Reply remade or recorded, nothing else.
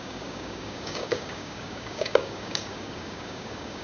remade